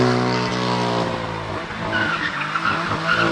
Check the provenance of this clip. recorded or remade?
recorded